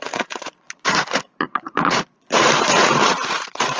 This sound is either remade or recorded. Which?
remade